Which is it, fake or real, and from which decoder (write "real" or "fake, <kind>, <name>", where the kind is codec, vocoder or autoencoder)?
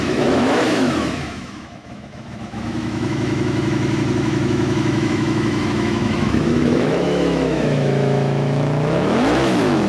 fake, autoencoder, DAC-VAE